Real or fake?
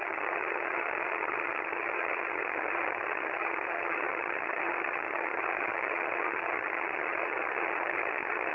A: fake